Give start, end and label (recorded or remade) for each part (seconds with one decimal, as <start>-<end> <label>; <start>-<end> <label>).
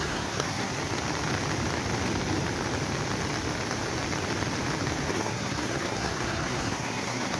0.0-0.7 remade; 0.7-5.1 recorded; 5.1-7.4 remade